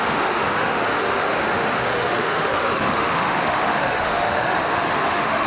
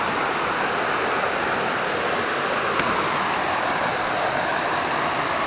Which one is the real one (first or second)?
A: second